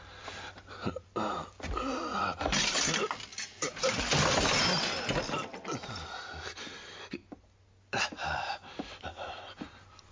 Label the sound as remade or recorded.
recorded